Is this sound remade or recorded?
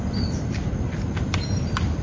recorded